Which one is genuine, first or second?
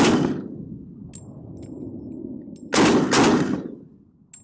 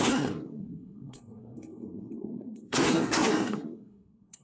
first